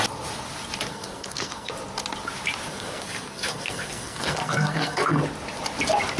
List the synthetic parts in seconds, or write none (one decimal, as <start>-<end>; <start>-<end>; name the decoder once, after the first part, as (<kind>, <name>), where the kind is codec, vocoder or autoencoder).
0.9-1.7 (codec, SNAC); 2.7-5.2